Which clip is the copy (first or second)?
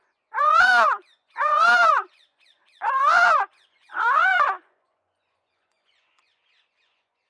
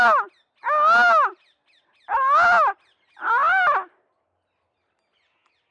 first